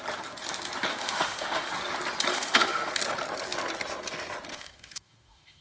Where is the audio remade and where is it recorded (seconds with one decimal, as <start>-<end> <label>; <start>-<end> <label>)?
0.0-0.9 recorded; 0.9-1.7 remade; 1.7-2.3 recorded; 2.3-2.9 remade; 2.9-4.5 recorded; 4.5-5.6 remade